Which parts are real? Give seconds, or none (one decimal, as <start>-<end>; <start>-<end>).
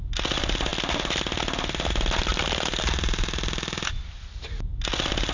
0.0-5.3